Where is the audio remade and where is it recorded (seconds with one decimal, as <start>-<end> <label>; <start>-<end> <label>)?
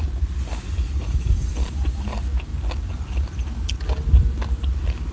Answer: 0.0-1.0 recorded; 1.0-1.7 remade; 1.7-5.1 recorded